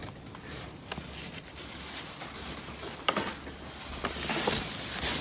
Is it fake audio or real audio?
real